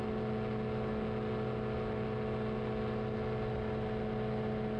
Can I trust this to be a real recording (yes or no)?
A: yes